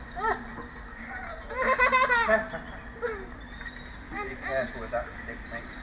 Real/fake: real